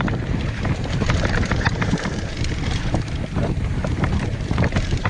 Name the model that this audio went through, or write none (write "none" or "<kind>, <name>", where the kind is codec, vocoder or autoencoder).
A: vocoder, BigVGAN v2